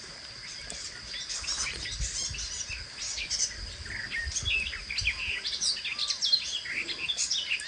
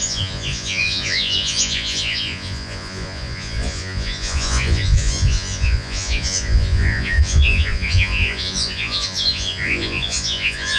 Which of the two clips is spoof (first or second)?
second